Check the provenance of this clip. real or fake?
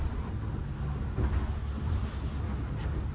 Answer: real